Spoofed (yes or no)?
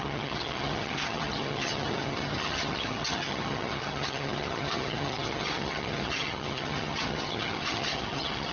yes